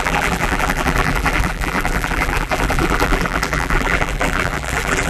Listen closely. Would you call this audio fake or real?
fake